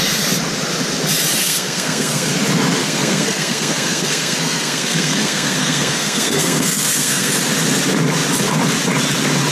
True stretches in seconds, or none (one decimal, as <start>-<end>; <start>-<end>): 0.0-1.4; 2.3-2.8; 7.3-9.5